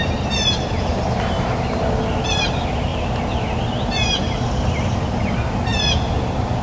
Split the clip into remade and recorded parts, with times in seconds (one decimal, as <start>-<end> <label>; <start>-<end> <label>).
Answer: 0.0-6.6 recorded